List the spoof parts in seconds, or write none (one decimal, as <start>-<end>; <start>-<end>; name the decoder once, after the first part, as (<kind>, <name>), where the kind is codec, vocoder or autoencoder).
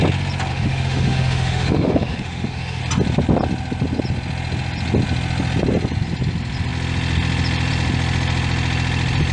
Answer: 0.5-2.8 (autoencoder, DAC-VAE)